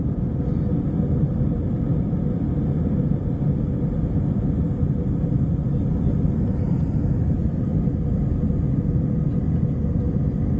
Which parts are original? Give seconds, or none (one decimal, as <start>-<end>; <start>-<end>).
0.0-7.7; 8.7-10.6